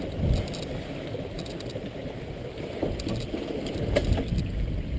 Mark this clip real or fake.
real